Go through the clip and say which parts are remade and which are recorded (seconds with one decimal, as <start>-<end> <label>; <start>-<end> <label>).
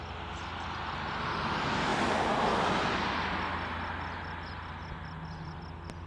0.0-6.1 recorded